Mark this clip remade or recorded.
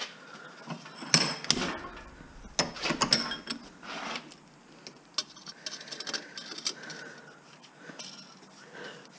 recorded